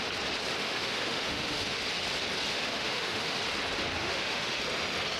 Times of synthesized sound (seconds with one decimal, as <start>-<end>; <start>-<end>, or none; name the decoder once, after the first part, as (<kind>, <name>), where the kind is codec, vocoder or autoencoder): 0.6-1.8 (autoencoder, DAC-VAE); 2.5-3.4; 4.0-4.6